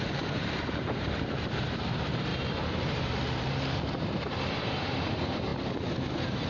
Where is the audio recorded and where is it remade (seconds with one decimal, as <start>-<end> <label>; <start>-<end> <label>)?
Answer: 0.0-2.3 remade; 2.3-2.8 recorded; 2.8-5.5 remade; 5.5-6.5 recorded